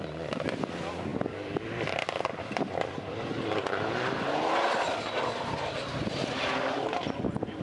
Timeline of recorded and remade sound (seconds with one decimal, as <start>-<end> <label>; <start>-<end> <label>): 0.0-7.6 recorded